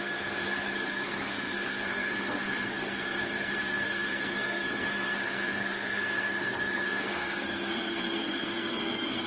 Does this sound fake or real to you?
fake